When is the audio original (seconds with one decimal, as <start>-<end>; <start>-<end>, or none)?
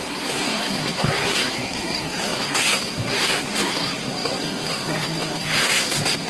none